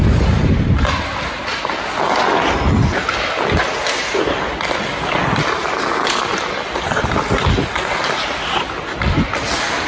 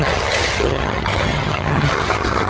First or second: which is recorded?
first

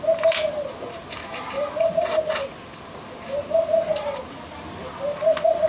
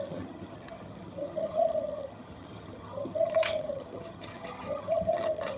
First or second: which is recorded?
first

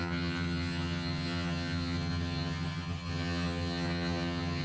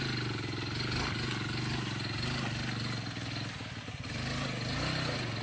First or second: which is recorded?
second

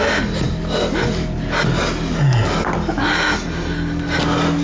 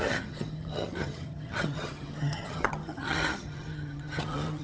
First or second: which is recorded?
first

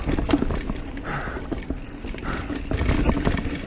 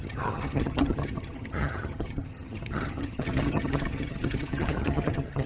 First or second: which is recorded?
first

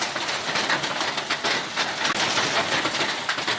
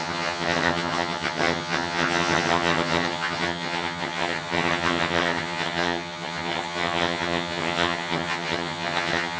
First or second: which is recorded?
first